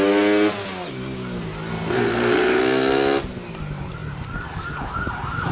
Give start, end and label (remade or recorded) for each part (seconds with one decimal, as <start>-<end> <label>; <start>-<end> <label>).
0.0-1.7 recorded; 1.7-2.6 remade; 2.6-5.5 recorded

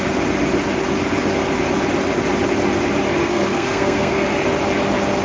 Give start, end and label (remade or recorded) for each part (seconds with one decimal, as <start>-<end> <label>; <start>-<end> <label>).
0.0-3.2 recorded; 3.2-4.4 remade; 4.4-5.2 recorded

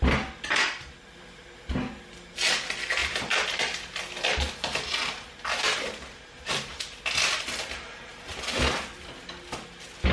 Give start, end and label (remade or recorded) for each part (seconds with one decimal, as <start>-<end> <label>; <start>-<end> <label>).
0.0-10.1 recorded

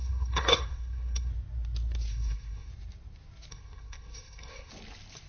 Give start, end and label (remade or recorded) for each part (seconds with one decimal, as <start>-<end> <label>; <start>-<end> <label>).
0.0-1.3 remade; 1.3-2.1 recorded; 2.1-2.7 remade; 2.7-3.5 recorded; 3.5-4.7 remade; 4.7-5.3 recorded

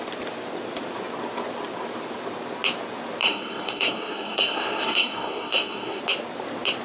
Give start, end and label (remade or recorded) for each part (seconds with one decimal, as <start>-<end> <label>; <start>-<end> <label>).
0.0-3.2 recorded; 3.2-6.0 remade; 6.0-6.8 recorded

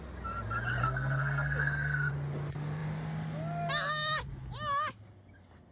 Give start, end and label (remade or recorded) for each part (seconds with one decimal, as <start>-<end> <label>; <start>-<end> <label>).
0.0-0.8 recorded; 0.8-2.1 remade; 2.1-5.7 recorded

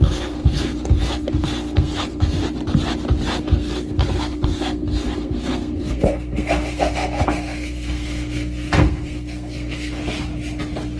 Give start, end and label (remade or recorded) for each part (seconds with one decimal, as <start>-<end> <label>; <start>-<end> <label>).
0.0-2.4 remade; 2.4-3.4 recorded; 3.4-10.0 remade; 10.0-11.0 recorded

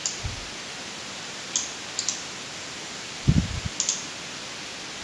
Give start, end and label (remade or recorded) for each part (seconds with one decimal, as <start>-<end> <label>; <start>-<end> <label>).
0.0-5.0 recorded